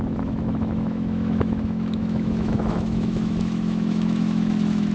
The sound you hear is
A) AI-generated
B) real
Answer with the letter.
A